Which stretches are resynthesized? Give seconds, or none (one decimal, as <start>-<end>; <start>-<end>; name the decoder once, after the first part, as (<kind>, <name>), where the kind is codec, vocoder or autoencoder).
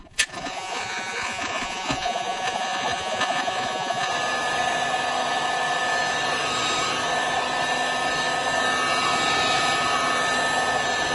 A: 0.0-4.1 (vocoder, Vocos)